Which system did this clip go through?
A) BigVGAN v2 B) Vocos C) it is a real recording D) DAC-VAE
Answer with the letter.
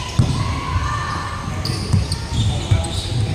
C